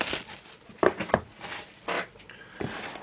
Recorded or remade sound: recorded